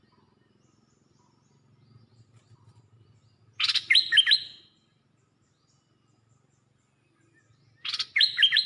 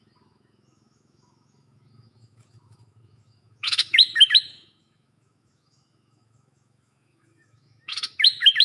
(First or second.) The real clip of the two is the first